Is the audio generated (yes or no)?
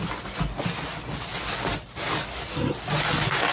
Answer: no